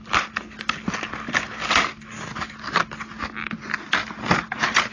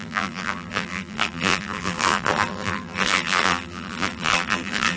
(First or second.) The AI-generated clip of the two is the second